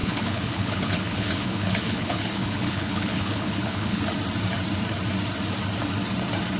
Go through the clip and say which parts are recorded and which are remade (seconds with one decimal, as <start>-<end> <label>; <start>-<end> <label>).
0.0-4.0 remade; 4.0-6.6 recorded